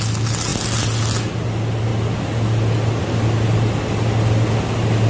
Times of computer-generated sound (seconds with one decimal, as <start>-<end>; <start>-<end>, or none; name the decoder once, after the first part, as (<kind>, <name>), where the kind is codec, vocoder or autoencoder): none